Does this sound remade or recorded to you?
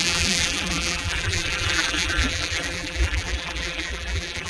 remade